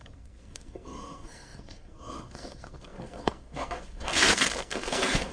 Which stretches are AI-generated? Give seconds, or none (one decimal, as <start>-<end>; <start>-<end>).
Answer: 0.0-5.3